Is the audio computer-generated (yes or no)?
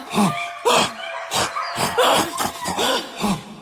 no